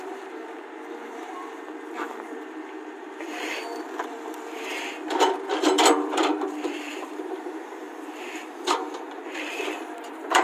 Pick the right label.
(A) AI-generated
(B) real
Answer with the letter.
A